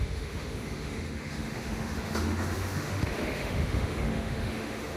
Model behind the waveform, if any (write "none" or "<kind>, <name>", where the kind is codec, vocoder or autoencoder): autoencoder, DAC-VAE